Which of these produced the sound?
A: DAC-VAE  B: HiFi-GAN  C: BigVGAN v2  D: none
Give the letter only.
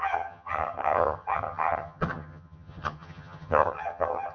B